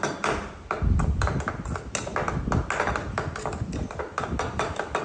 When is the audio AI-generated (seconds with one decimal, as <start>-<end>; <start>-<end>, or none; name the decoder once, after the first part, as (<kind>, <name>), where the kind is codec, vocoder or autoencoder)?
none